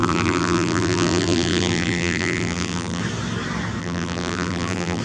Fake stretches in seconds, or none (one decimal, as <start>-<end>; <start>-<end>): 0.0-3.0; 3.8-5.0